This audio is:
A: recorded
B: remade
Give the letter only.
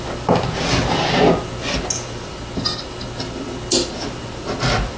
A